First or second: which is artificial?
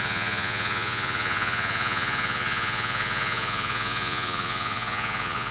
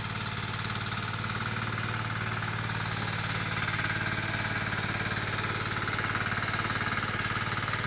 first